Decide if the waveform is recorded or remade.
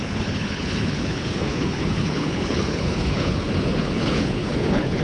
remade